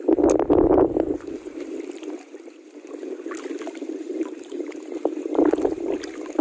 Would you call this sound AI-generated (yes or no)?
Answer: no